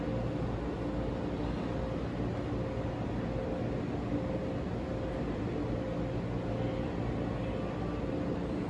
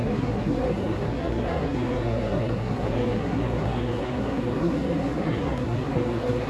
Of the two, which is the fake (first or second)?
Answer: second